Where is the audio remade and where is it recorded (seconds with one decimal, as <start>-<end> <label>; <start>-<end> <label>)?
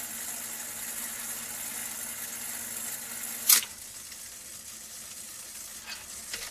0.0-4.5 recorded; 4.5-5.3 remade; 5.3-6.5 recorded